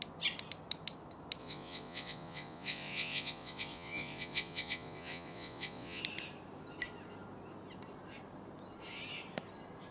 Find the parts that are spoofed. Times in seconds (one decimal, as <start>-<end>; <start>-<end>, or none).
1.4-6.0